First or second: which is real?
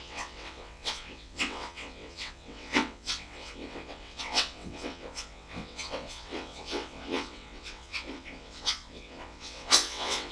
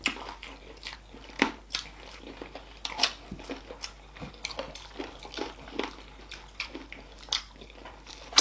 second